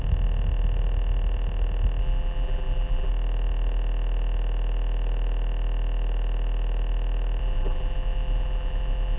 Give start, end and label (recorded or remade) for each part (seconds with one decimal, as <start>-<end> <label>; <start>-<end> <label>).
0.0-2.0 recorded; 2.0-3.1 remade; 3.1-7.4 recorded; 7.4-9.2 remade